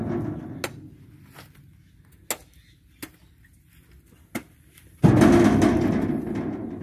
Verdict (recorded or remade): recorded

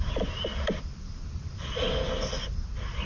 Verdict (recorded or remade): recorded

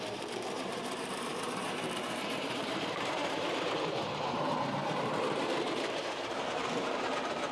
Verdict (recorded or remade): remade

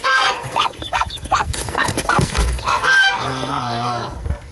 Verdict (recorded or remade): remade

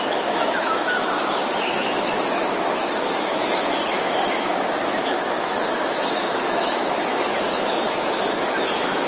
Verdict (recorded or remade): remade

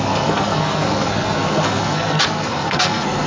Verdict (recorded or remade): remade